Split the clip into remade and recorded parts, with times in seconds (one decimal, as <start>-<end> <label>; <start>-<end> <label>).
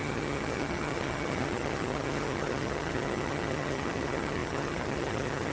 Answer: 0.0-5.5 remade